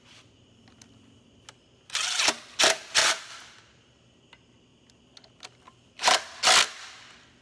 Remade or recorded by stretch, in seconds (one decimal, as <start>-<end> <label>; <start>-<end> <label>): 0.0-3.0 recorded; 3.0-3.9 remade; 3.9-7.4 recorded

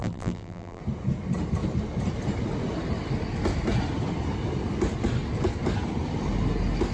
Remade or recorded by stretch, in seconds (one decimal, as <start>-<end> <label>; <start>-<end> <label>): 0.0-0.8 remade; 0.8-6.9 recorded

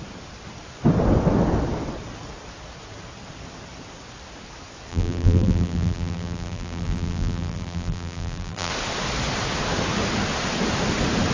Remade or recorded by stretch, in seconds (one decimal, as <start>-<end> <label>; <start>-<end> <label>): 0.0-4.9 recorded; 4.9-8.7 remade; 8.7-11.3 recorded

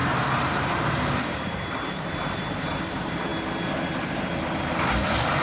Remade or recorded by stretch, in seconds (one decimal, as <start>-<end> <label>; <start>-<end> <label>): 0.0-3.3 remade; 3.3-5.4 recorded

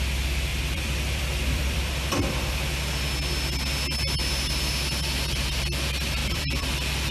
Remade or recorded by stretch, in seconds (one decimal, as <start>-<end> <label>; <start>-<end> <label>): 0.0-0.5 recorded; 0.5-1.9 remade; 1.9-6.2 recorded; 6.2-7.1 remade

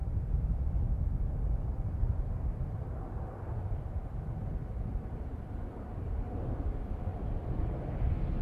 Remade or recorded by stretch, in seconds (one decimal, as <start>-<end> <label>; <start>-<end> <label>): 0.0-2.1 recorded; 2.1-6.1 remade; 6.1-7.1 recorded; 7.1-7.6 remade; 7.6-8.4 recorded